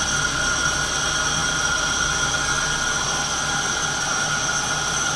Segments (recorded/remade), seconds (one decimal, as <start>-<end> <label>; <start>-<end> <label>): 0.0-5.2 recorded